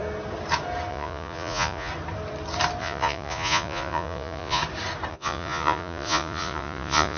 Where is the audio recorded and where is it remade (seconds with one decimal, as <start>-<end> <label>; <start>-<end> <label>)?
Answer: 0.0-0.9 recorded; 0.9-1.9 remade; 1.9-2.8 recorded; 2.8-4.6 remade; 4.6-5.1 recorded; 5.1-7.2 remade